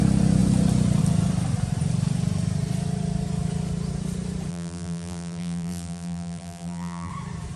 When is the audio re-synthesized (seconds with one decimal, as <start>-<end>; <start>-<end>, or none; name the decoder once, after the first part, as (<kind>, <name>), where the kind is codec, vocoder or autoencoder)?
4.5-7.1 (vocoder, BigVGAN v2)

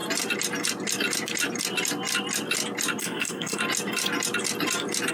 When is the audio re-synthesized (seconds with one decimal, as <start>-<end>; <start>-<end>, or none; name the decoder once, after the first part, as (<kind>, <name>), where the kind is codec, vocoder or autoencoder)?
3.0-3.6 (codec, SNAC)

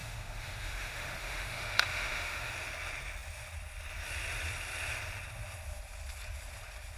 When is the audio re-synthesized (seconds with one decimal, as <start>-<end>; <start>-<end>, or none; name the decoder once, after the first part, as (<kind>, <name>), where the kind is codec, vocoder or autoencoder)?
0.0-2.5 (autoencoder, DAC-VAE)